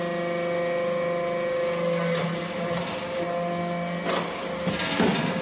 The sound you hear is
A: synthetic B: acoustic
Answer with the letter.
B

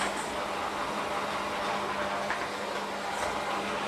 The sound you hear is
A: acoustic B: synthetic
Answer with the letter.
A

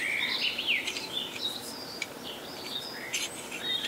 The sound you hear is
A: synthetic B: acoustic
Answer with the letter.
B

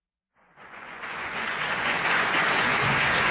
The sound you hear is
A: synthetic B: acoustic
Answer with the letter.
A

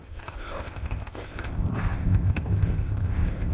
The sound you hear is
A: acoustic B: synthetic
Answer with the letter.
B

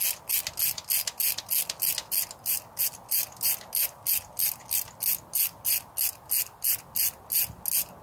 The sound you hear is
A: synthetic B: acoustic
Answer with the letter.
B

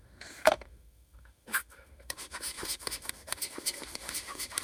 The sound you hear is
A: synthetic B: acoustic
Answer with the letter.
A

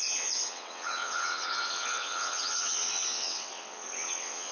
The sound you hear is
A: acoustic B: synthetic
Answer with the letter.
B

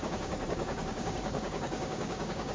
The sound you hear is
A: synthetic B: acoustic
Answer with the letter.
A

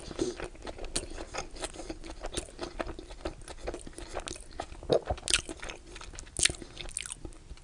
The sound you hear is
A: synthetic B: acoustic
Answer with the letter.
B